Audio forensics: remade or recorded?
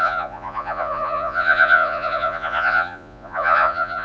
remade